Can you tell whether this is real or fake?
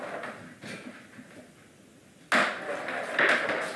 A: real